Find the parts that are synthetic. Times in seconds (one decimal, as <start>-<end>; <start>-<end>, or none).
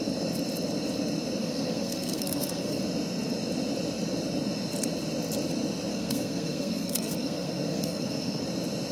1.4-2.8; 5.9-8.4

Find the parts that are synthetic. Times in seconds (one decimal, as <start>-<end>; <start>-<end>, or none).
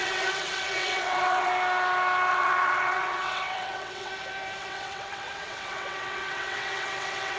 0.0-1.5; 2.3-4.1; 4.6-7.4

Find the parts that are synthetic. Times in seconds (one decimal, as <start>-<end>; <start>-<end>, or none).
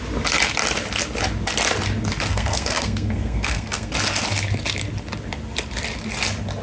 2.3-3.9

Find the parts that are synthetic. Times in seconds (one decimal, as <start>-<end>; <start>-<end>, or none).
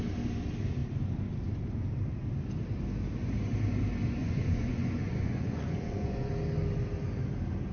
4.2-6.3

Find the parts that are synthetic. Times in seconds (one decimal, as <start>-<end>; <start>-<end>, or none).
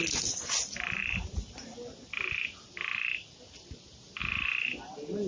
none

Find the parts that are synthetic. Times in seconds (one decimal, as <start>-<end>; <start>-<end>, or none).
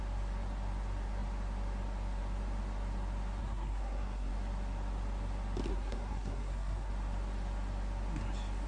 3.4-4.3; 5.7-6.9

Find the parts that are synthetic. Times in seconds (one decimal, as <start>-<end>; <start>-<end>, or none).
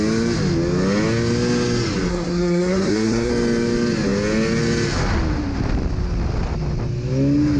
2.1-3.3